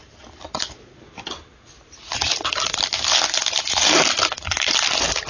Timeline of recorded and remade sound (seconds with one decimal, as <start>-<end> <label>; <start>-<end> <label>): 0.0-5.3 recorded